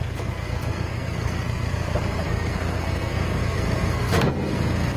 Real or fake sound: fake